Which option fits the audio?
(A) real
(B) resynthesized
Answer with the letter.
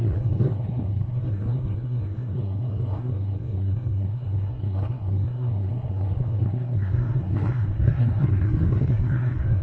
B